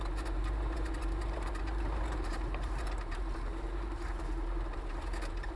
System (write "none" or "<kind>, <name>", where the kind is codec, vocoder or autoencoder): vocoder, BigVGAN v2